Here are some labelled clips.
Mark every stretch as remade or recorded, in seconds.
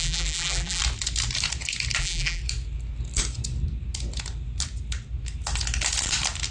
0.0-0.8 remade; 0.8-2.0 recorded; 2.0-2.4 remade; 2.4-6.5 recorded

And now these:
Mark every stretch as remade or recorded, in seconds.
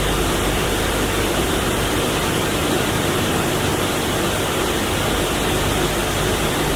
0.0-2.6 remade; 2.6-3.1 recorded; 3.1-3.7 remade; 3.7-6.2 recorded; 6.2-6.8 remade